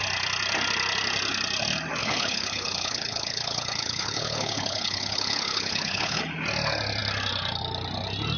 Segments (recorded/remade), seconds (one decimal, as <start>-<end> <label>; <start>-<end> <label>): 0.0-2.0 recorded; 2.0-6.2 remade; 6.2-8.4 recorded